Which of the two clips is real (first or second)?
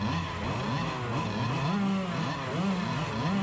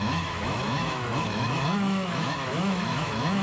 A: first